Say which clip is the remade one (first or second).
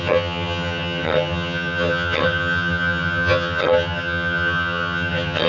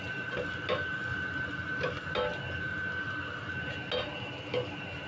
first